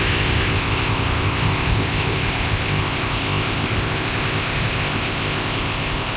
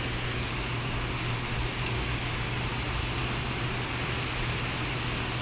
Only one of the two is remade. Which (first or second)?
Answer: first